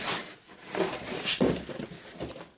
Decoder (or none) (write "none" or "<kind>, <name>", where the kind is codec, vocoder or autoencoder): none